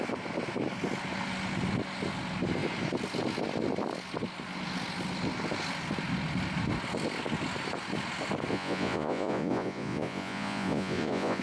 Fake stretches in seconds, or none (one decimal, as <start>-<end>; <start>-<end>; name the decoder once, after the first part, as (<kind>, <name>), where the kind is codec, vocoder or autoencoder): 8.5-11.4 (vocoder, Vocos)

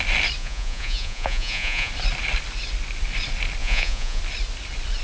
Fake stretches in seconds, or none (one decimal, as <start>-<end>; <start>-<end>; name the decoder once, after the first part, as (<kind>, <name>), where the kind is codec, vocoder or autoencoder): 0.4-1.9 (vocoder, Vocos); 3.6-4.2

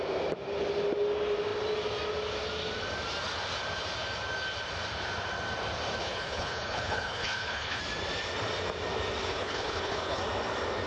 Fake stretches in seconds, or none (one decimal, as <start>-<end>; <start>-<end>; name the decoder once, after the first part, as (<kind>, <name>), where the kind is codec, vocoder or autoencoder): 6.0-7.8 (codec, HILCodec); 9.3-10.2

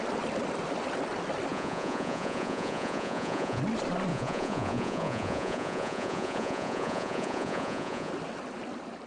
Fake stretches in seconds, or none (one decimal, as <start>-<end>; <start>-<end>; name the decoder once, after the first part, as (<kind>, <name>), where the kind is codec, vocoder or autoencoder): 1.5-3.6 (vocoder, Vocos); 4.1-8.1

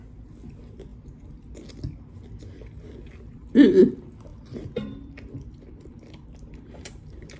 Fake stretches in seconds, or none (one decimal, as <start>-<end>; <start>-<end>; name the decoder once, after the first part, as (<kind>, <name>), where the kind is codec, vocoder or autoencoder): 4.3-7.4 (vocoder, BigVGAN v2)